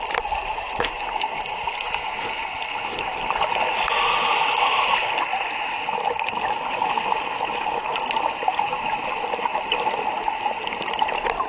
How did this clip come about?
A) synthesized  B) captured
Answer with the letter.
B